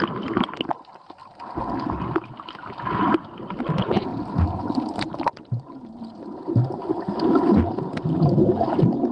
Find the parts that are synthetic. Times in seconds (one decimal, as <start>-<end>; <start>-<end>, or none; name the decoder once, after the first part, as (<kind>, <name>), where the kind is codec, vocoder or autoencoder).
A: 4.1-6.0 (vocoder, BigVGAN v2)